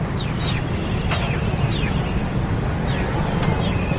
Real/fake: real